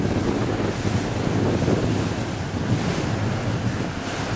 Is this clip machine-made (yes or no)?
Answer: no